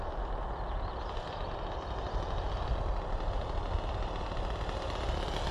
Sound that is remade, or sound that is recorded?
recorded